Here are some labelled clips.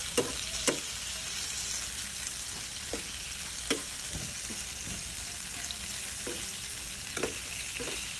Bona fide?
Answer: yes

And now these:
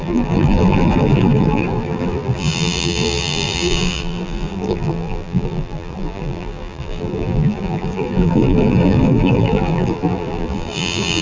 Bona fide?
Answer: no